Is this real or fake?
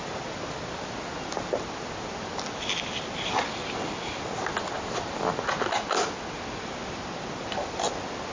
real